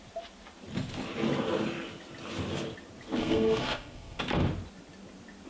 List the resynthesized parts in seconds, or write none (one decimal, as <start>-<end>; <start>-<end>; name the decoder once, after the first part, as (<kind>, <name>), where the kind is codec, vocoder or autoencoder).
3.2-4.2 (codec, SNAC)